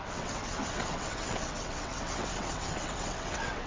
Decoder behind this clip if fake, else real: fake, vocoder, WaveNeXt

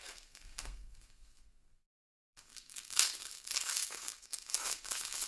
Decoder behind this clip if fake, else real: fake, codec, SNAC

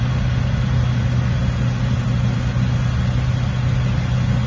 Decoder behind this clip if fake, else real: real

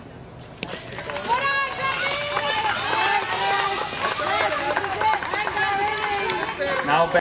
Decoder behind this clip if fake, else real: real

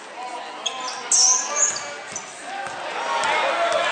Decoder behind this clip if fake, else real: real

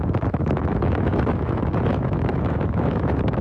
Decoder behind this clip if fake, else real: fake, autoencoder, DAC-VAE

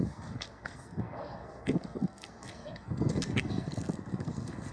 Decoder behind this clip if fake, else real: fake, codec, SNAC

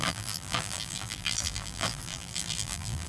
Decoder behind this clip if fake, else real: fake, vocoder, BigVGAN v2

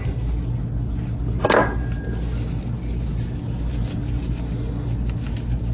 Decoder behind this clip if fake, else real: real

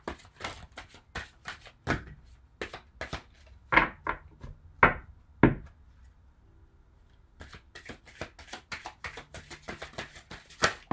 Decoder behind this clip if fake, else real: real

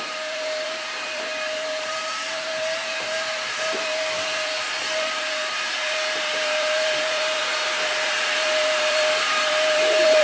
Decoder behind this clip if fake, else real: fake, vocoder, BigVGAN v2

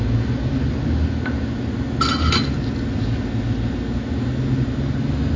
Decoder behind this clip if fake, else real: real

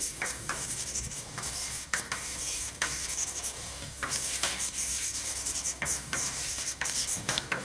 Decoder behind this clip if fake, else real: fake, codec, DAC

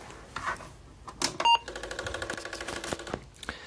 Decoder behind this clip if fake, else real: real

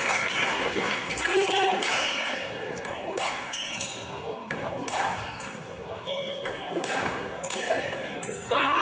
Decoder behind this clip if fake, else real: fake, codec, SNAC